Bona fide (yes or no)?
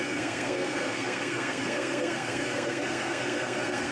no